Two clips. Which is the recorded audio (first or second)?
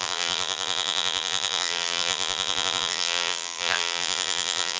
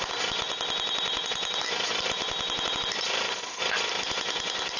second